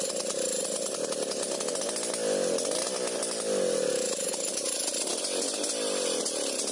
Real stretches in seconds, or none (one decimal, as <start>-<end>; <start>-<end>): 0.0-6.7